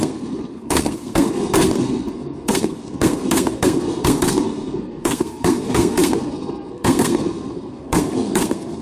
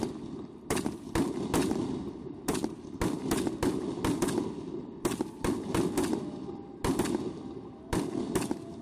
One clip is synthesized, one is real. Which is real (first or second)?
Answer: second